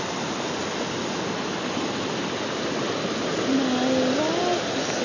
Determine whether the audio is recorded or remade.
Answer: recorded